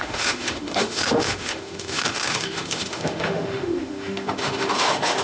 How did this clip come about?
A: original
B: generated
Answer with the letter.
B